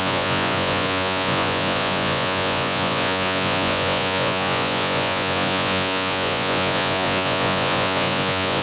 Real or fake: fake